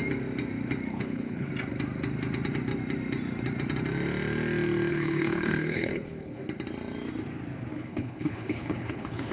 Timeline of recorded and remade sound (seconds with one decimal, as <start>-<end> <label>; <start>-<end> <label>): 0.0-0.9 recorded; 0.9-1.5 remade; 1.5-4.9 recorded; 4.9-6.4 remade; 6.4-7.7 recorded; 7.7-9.3 remade